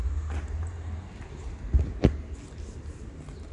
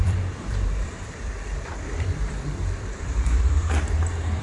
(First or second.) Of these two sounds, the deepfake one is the second